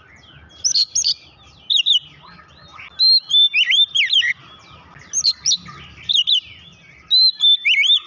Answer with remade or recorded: recorded